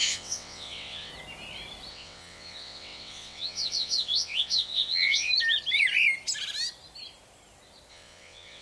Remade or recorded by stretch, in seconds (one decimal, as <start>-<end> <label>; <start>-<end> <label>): 0.0-1.1 remade; 1.1-1.9 recorded; 1.9-5.3 remade; 5.3-7.9 recorded; 7.9-8.6 remade